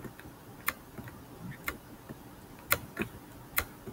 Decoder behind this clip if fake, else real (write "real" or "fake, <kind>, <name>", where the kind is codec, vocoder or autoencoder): real